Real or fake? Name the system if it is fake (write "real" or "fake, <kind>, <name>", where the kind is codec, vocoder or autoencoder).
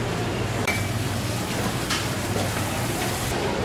fake, vocoder, BigVGAN v2